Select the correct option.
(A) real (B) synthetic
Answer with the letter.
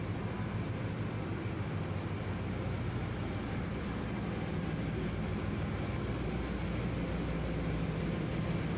A